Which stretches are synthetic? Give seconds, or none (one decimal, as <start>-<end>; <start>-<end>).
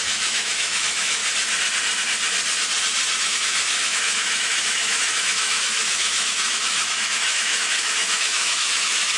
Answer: 0.0-1.2; 3.2-9.2